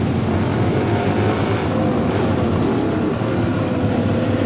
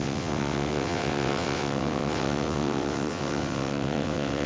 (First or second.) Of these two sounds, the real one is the first